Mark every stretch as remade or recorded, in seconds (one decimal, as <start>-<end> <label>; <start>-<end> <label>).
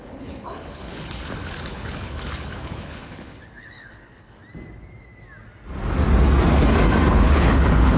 0.0-4.4 remade; 4.4-7.1 recorded; 7.1-8.0 remade